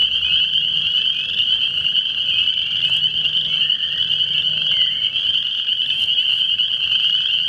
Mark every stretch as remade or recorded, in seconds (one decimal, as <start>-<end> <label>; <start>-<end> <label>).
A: 0.0-7.5 recorded